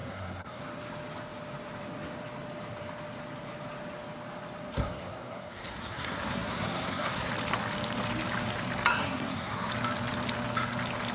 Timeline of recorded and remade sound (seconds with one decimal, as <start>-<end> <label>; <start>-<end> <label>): 0.0-0.6 remade; 0.6-4.7 recorded; 4.7-7.3 remade; 7.3-8.9 recorded; 8.9-9.7 remade; 9.7-11.1 recorded